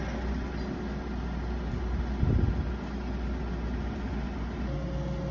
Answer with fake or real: real